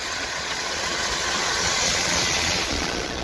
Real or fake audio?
fake